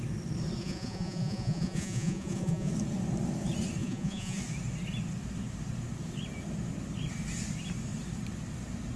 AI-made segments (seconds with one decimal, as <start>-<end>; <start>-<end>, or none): 0.6-2.7; 3.8-4.4